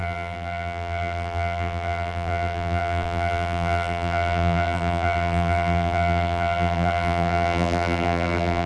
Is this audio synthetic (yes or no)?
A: yes